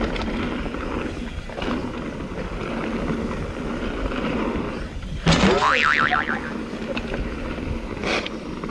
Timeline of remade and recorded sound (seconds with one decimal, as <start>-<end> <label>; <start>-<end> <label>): 0.0-8.7 recorded